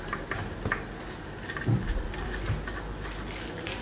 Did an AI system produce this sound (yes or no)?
no